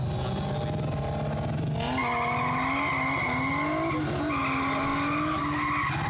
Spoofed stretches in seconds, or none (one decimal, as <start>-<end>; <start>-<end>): none